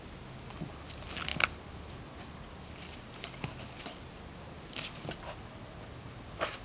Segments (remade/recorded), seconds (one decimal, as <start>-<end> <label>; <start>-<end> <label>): 0.0-6.6 recorded